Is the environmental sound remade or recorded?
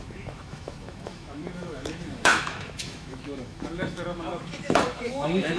remade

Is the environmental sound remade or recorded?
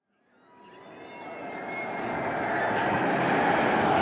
recorded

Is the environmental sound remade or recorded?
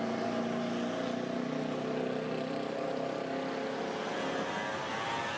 recorded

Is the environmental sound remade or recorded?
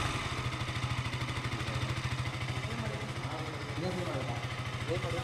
recorded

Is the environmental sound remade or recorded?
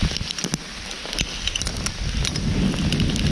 recorded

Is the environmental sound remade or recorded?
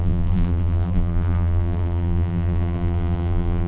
remade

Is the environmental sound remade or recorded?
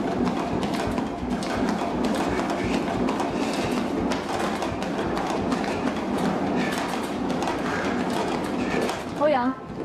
recorded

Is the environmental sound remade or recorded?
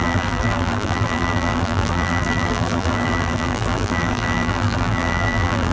remade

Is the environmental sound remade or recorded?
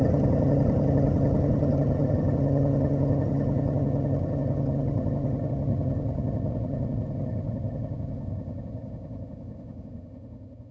remade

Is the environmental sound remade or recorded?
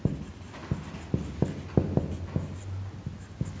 recorded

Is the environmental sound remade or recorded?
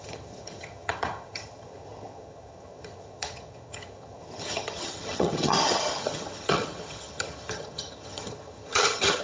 remade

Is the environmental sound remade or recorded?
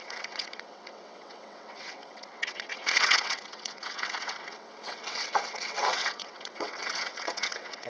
remade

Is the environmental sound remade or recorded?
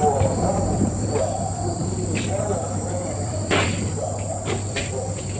remade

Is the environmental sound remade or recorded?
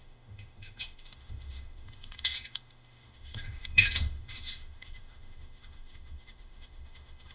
remade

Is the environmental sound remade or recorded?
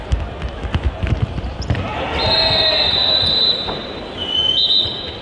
recorded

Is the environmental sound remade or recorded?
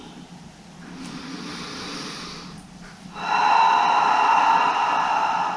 recorded